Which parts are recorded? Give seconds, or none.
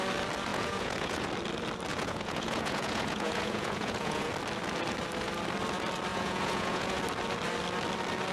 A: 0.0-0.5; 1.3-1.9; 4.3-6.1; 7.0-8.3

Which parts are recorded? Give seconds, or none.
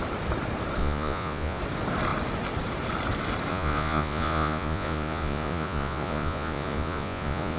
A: 0.0-0.8; 1.6-3.5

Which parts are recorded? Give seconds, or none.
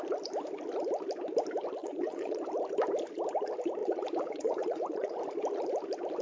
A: 0.0-1.8; 2.4-3.8; 5.1-6.2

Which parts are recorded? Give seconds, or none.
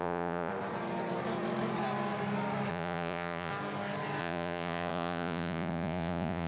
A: 0.5-2.7; 3.5-4.2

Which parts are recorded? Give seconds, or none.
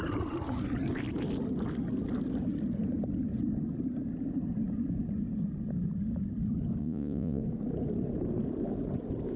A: 0.0-6.8; 7.4-9.4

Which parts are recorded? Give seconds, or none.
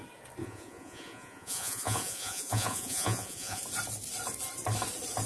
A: 0.0-0.4; 3.6-5.3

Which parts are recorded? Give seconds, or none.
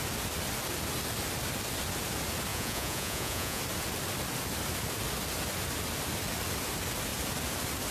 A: 0.0-2.5; 3.6-7.9